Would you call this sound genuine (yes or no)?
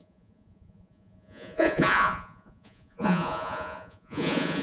no